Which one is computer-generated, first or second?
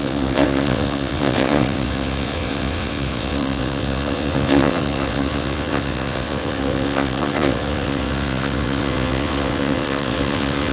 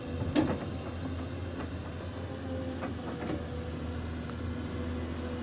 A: first